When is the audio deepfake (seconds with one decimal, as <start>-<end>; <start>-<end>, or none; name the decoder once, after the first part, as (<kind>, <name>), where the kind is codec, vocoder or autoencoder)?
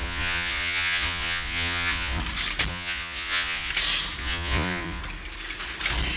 0.0-2.2 (vocoder, Vocos); 2.7-3.7; 4.2-5.0